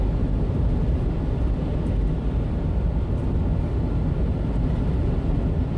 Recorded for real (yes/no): yes